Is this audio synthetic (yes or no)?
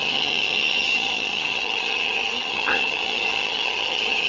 yes